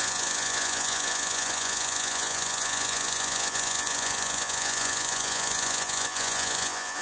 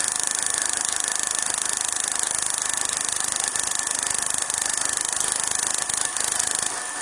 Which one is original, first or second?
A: second